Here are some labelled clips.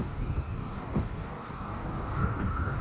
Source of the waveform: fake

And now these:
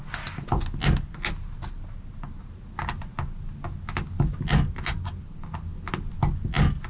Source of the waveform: real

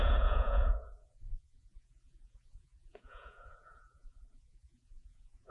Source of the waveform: fake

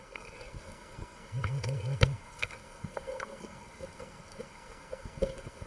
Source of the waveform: fake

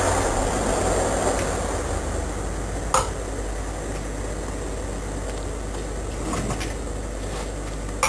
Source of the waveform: real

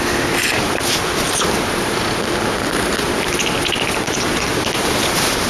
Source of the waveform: real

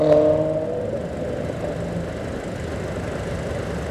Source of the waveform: real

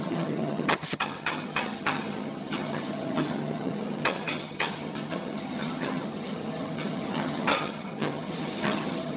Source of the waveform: fake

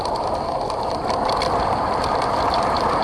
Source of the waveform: real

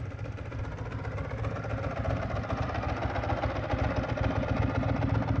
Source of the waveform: real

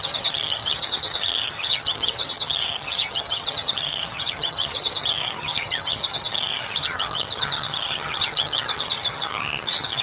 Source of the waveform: fake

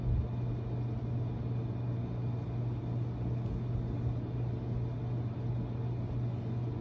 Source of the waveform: real